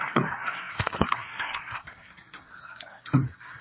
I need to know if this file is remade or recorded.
remade